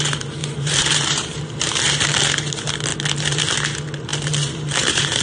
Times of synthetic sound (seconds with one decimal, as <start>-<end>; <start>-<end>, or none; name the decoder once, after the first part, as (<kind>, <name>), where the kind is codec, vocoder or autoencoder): 0.4-2.0 (vocoder, BigVGAN v2); 4.1-5.2